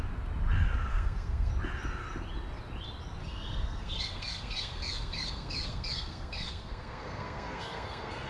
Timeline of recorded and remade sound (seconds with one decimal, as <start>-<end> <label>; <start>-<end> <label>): 0.0-0.9 recorded; 0.9-1.5 remade; 1.5-3.2 recorded; 3.2-8.3 remade